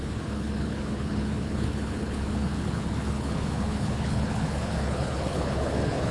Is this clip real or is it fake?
fake